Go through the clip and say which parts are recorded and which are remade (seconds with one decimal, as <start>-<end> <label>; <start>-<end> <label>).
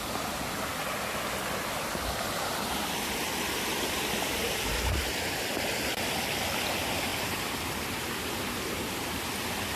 0.0-9.8 recorded